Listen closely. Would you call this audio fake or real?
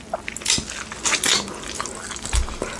real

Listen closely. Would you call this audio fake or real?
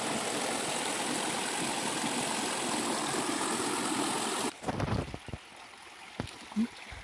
real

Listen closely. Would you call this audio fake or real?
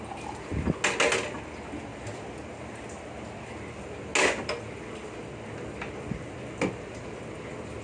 real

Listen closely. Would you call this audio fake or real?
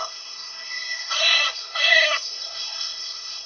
fake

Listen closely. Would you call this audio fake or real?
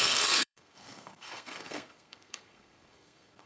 fake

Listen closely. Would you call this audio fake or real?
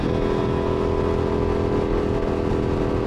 real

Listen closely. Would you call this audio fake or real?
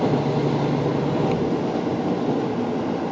real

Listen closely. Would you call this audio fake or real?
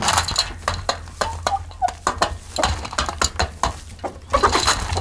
real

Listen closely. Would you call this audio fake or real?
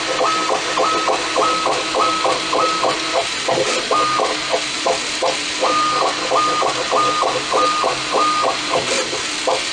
real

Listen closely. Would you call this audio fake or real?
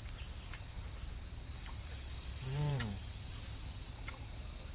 fake